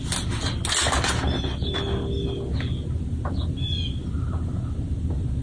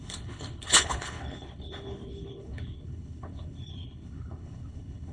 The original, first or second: first